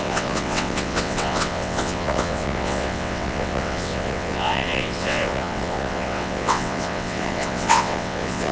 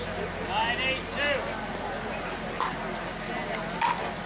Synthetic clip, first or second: first